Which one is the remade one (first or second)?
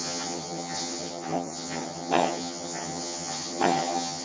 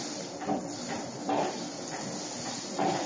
first